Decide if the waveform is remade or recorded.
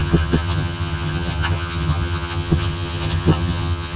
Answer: remade